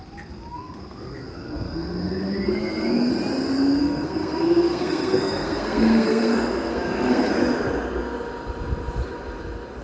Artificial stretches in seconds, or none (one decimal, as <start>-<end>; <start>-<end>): 0.5-3.1; 3.8-7.3